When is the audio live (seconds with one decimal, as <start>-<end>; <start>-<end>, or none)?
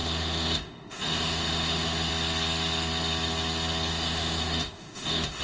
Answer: 2.1-3.9